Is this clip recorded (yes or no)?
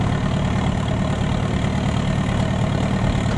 yes